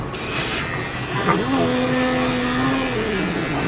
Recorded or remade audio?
recorded